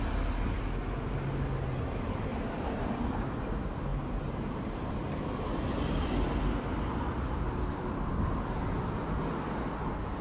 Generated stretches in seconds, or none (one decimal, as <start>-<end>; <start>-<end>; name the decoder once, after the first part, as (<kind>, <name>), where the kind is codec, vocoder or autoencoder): 2.3-3.4 (vocoder, BigVGAN v2); 3.9-5.2